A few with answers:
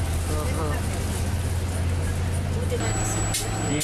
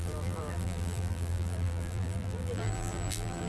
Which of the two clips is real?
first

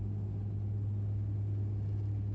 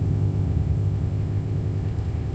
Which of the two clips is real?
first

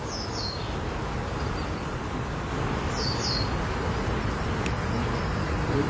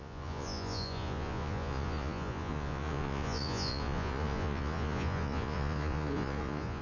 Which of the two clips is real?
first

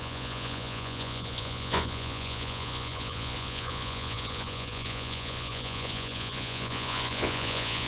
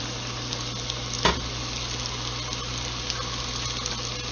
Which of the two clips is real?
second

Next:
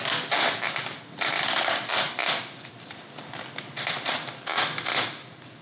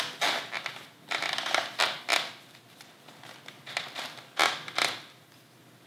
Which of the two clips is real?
second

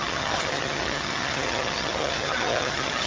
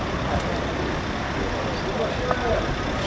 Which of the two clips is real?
second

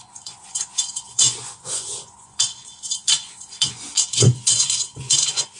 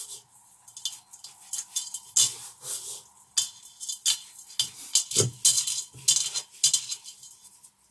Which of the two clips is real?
second